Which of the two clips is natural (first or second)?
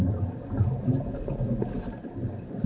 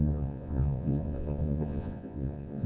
first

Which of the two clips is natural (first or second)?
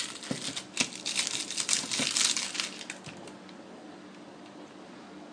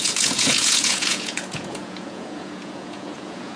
first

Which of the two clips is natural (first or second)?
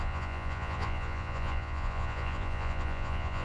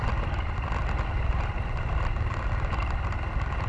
second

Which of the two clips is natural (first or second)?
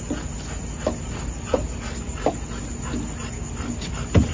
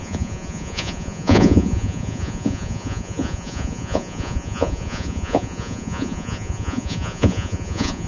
first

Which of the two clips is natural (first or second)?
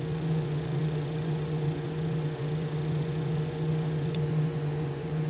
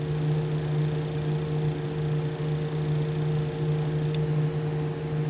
second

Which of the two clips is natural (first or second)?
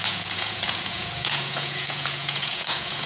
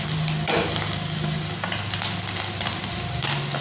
second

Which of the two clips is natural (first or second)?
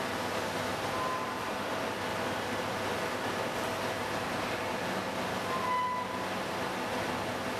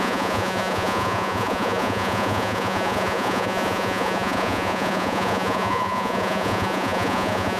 first